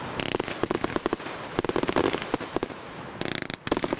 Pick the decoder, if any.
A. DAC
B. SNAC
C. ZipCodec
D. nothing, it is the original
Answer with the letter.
D